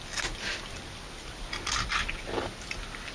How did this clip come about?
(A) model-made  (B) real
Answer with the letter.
B